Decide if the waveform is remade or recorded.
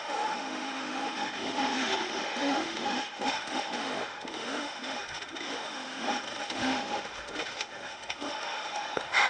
remade